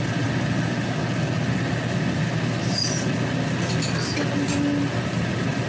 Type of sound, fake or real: real